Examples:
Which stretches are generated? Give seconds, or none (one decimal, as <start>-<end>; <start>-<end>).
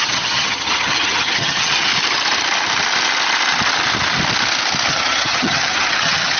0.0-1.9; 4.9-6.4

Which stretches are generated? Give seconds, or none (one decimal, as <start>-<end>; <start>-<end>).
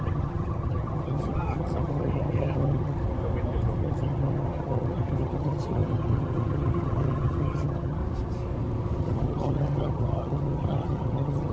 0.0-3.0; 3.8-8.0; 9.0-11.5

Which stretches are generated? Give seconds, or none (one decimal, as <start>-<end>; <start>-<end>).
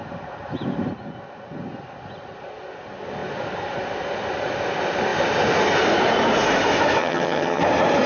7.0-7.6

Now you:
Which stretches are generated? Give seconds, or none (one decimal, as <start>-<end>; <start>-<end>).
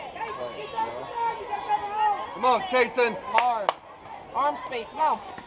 none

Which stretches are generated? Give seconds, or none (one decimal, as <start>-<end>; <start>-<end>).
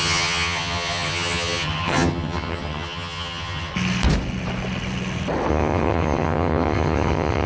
0.0-3.7; 5.5-7.5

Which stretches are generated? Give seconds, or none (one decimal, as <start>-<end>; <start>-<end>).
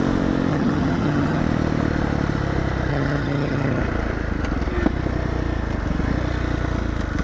0.5-1.4; 2.9-3.8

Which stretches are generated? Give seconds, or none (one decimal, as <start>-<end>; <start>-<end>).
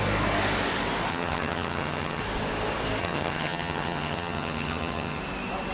1.1-2.2; 3.0-5.2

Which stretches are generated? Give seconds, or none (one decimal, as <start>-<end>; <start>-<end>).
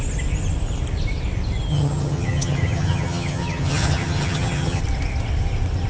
1.7-4.8